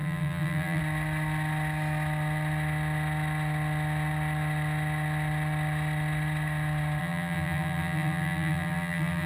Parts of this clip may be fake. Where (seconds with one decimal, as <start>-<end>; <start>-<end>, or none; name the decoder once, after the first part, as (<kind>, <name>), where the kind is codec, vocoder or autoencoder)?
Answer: 0.0-0.8 (vocoder, BigVGAN v2); 7.0-9.3